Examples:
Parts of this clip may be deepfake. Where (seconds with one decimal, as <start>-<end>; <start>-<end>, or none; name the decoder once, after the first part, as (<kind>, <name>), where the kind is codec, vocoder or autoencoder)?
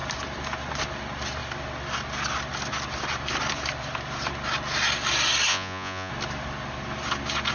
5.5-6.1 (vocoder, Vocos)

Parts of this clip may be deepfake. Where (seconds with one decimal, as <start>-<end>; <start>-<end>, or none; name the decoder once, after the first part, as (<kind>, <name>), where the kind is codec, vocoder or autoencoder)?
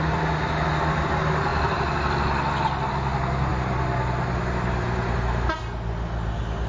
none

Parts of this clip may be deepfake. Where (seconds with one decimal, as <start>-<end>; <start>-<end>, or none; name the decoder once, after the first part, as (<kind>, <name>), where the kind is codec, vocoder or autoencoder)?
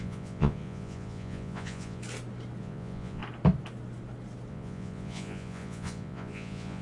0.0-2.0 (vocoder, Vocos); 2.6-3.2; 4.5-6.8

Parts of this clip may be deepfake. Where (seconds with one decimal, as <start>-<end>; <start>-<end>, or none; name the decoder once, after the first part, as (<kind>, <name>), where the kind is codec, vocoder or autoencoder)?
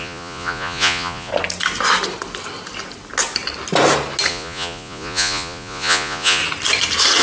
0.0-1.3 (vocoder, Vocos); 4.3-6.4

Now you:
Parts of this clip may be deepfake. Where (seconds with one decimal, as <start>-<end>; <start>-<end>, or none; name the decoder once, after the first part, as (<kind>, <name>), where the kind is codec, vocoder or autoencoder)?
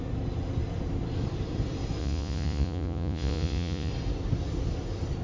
2.0-3.9 (vocoder, Vocos)